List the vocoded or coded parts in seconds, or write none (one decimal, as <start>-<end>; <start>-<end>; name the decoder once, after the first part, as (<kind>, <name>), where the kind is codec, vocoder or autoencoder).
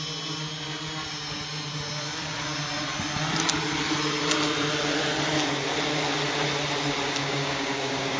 7.2-8.2 (codec, DAC)